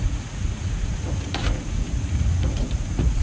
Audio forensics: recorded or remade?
remade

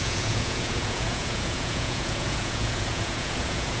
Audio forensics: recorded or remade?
remade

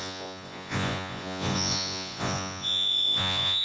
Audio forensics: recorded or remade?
remade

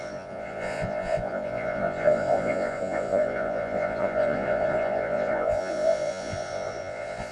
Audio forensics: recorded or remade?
remade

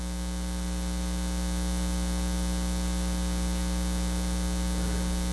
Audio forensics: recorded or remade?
recorded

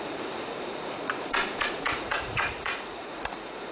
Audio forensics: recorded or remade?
remade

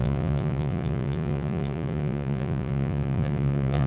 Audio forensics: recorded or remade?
remade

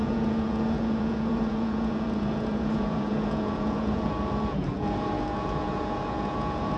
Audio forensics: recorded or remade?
remade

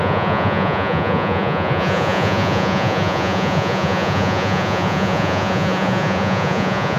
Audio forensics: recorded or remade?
remade